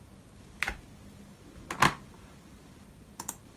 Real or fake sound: real